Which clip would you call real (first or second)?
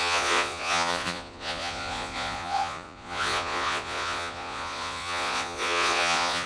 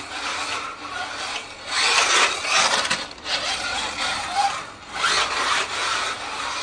second